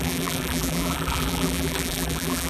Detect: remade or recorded remade